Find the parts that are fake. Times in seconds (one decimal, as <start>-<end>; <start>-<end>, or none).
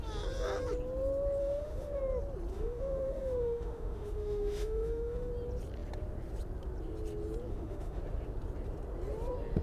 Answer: 1.4-2.0; 2.5-5.3; 7.5-8.0